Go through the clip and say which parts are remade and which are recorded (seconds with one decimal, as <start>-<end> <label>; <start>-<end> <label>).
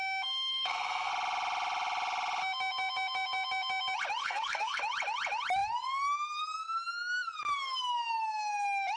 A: 0.0-0.5 recorded; 0.5-1.1 remade; 1.1-4.2 recorded; 4.2-4.8 remade; 4.8-9.0 recorded